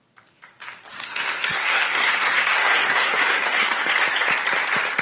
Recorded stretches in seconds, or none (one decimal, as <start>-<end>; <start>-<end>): 0.0-0.9; 3.9-5.0